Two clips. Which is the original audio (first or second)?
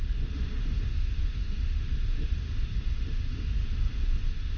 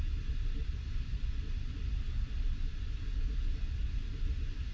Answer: second